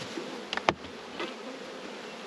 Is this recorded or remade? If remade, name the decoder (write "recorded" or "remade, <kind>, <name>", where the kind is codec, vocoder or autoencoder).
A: recorded